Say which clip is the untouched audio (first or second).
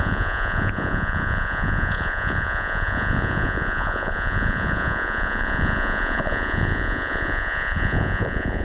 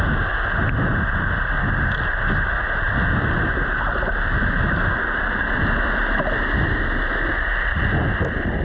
second